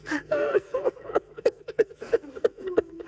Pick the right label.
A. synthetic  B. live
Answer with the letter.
A